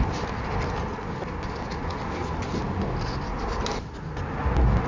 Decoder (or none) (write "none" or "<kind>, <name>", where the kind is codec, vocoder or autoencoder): none